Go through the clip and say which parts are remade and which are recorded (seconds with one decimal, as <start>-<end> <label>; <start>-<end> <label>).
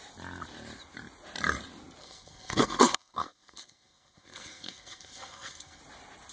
0.0-2.0 recorded; 2.0-5.8 remade; 5.8-6.3 recorded